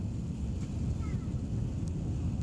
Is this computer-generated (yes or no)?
no